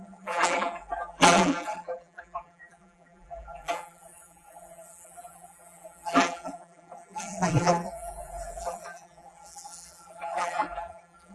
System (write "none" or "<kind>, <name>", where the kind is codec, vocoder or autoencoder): vocoder, BigVGAN v2